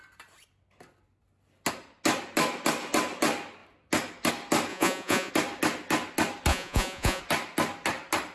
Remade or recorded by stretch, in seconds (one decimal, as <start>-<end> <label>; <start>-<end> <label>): 0.0-4.7 recorded; 4.7-5.3 remade; 5.3-6.5 recorded; 6.5-7.2 remade; 7.2-8.3 recorded